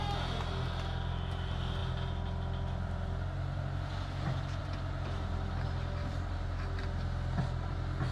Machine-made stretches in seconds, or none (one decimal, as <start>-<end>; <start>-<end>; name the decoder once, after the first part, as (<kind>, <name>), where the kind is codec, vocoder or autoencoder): none